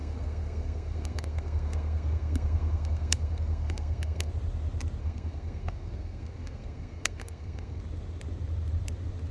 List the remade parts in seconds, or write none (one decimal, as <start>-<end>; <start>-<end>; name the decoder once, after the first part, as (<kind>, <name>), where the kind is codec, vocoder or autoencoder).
0.0-4.3 (codec, SNAC); 5.0-7.8